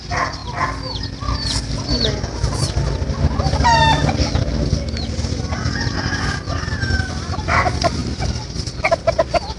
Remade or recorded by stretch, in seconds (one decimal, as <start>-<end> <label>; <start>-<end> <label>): 0.0-8.0 recorded; 8.0-8.9 remade; 8.9-9.6 recorded